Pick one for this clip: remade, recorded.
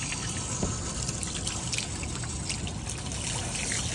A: recorded